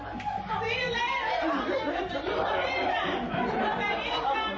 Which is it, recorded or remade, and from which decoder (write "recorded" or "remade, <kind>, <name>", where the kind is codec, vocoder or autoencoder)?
recorded